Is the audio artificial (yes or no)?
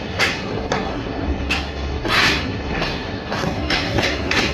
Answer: yes